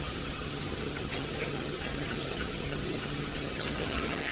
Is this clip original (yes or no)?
no